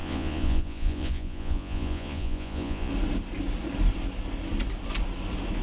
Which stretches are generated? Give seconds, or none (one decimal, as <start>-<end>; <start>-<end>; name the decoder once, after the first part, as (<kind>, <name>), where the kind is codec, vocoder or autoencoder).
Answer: 0.0-2.9 (vocoder, Vocos)